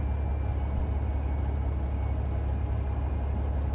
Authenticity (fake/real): real